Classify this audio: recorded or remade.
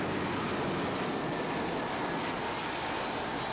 recorded